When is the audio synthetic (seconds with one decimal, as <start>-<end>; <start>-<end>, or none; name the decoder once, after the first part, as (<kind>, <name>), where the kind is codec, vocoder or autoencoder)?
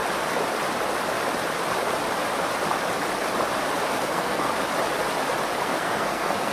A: 3.9-4.5 (codec, SNAC); 5.6-6.5